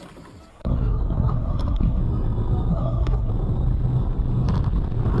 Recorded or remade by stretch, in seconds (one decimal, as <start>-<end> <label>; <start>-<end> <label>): 0.0-0.5 recorded; 0.5-2.0 remade; 2.0-2.7 recorded; 2.7-3.3 remade; 3.3-5.2 recorded